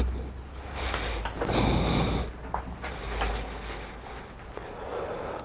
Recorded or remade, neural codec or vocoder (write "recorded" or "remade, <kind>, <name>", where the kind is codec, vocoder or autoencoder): recorded